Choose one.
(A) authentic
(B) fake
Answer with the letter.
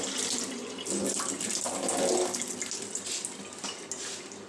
A